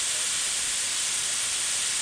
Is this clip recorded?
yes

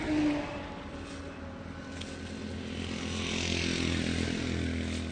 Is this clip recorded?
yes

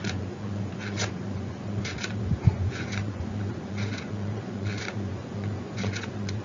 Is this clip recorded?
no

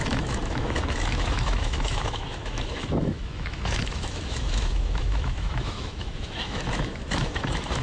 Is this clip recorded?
no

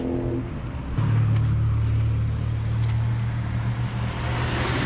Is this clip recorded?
yes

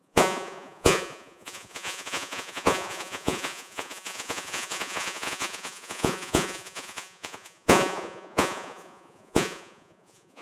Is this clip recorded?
no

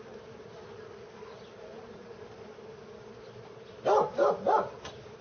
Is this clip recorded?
yes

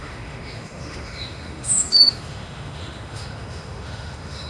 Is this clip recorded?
no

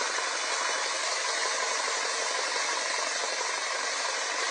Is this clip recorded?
yes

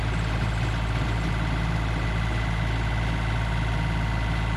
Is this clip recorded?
yes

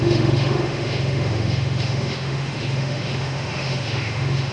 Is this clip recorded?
no